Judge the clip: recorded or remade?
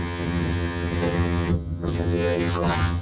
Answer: remade